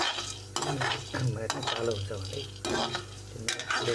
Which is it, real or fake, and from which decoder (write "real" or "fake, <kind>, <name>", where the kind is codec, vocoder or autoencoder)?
real